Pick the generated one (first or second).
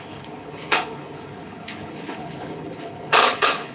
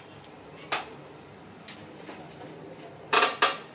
first